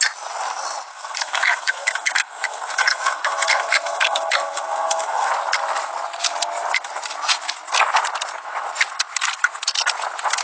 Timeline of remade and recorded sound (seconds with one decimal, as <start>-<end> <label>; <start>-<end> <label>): 0.0-0.9 recorded; 0.9-5.3 remade; 5.3-10.4 recorded